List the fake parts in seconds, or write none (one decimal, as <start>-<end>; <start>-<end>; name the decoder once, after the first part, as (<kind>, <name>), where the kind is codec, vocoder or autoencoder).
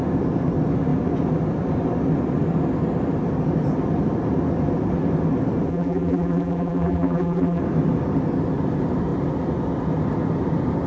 5.7-7.6 (vocoder, BigVGAN v2)